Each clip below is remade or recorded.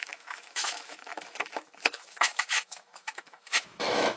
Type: remade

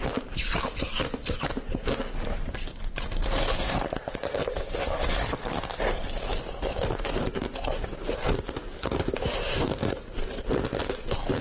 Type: recorded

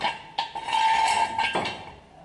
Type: recorded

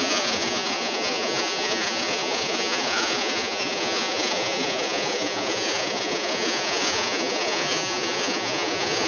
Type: remade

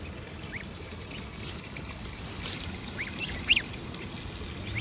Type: recorded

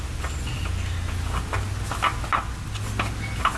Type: recorded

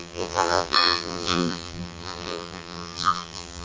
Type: remade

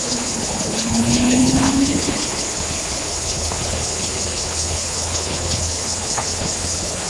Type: remade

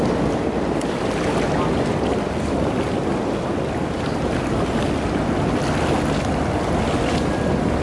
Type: recorded